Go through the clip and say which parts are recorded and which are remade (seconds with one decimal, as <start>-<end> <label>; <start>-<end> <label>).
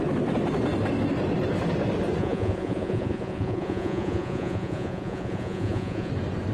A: 0.0-2.2 recorded; 2.2-6.1 remade; 6.1-6.5 recorded